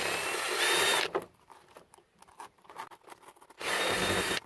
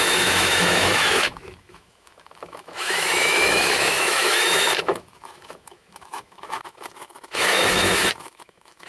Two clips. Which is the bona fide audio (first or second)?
first